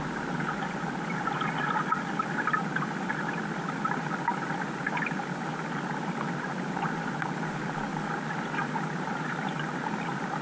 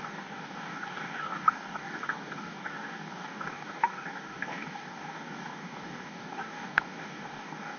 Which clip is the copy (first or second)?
second